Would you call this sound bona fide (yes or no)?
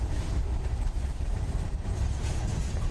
no